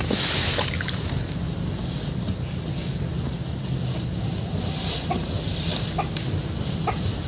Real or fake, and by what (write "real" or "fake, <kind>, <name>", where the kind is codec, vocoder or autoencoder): real